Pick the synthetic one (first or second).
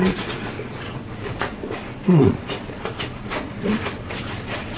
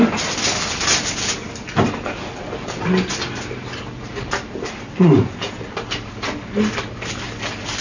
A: first